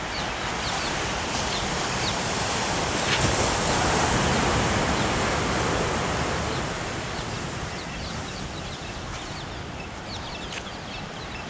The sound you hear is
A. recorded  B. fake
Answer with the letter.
A